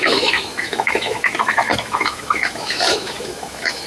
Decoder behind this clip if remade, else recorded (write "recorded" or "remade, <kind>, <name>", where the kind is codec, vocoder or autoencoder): remade, autoencoder, DAC-VAE